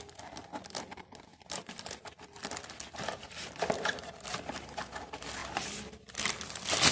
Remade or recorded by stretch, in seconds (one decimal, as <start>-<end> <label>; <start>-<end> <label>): 0.0-6.9 recorded